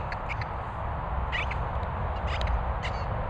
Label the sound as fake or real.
real